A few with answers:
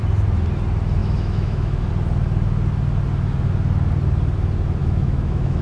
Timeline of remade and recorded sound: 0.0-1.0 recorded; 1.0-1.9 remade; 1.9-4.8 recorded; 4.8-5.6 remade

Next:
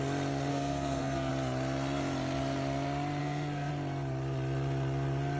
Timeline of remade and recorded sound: 0.0-0.5 recorded; 0.5-1.3 remade; 1.3-3.2 recorded; 3.2-3.7 remade; 3.7-5.4 recorded